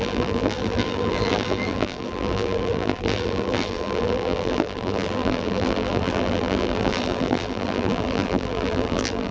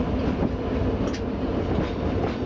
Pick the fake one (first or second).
first